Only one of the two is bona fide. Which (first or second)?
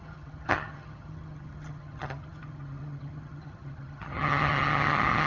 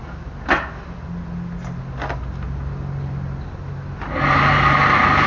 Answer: second